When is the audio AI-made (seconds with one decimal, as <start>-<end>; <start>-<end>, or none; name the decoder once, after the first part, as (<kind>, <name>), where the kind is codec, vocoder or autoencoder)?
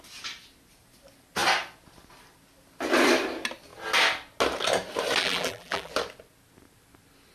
5.2-5.9 (vocoder, BigVGAN v2)